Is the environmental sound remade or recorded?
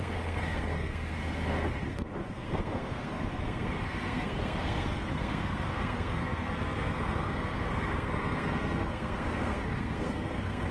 remade